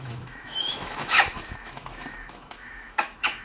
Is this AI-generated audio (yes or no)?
yes